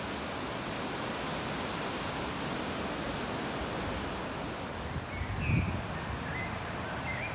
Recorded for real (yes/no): yes